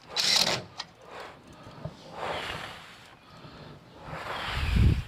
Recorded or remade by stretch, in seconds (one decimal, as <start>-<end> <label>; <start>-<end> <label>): 0.0-5.1 recorded